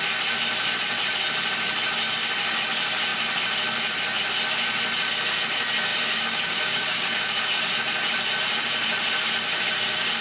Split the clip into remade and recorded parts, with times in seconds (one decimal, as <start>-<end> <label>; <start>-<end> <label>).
0.0-5.9 recorded; 5.9-7.6 remade; 7.6-10.2 recorded